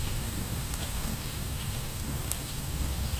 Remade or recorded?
remade